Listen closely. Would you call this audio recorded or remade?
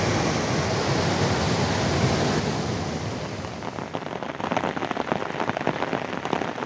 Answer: recorded